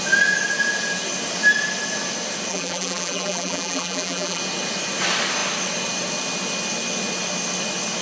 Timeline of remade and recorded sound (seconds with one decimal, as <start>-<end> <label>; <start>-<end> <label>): 0.0-2.5 recorded; 2.5-4.4 remade; 4.4-8.0 recorded